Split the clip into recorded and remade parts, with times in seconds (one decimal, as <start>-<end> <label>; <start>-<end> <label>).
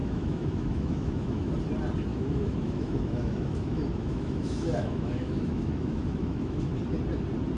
0.0-1.5 remade; 1.5-2.1 recorded; 2.1-6.7 remade; 6.7-7.6 recorded